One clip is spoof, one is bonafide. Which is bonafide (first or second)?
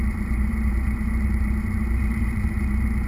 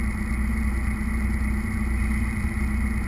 second